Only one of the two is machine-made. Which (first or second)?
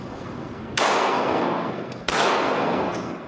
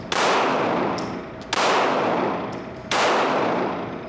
first